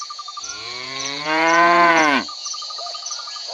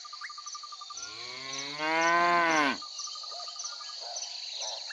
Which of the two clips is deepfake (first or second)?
first